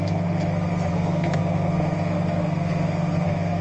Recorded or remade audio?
remade